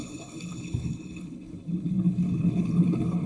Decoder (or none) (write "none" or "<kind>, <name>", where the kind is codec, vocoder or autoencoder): codec, HILCodec